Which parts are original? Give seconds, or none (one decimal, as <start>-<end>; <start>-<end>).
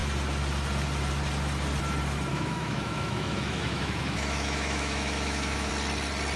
0.0-2.3; 5.7-6.4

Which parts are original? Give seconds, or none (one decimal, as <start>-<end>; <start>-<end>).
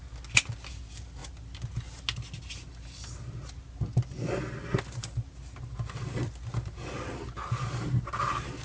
0.0-8.6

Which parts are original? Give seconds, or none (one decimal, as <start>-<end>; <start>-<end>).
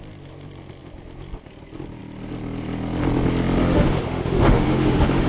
0.0-3.6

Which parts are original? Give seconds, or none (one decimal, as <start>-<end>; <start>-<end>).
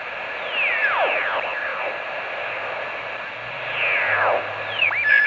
0.0-5.3